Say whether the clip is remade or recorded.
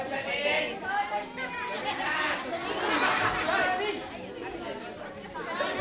recorded